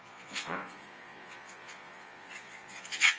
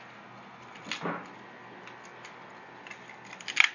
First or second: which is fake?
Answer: first